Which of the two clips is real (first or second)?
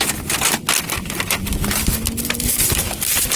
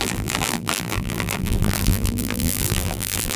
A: first